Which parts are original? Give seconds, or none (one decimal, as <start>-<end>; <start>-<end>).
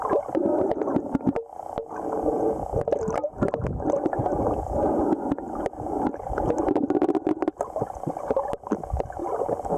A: 0.0-9.2